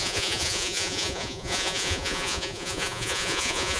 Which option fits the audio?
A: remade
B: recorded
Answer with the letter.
A